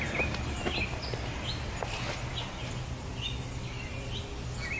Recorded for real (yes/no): yes